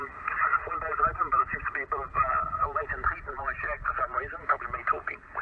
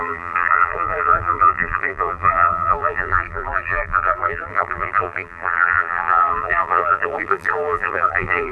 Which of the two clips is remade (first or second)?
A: second